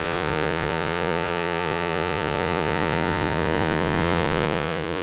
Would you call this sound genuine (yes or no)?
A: no